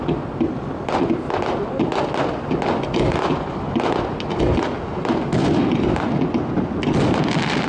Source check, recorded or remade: recorded